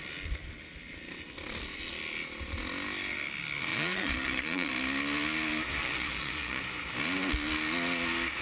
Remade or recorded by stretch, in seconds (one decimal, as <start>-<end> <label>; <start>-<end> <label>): 0.0-3.7 recorded; 3.7-4.7 remade; 4.7-5.8 recorded; 5.8-6.6 remade; 6.6-8.4 recorded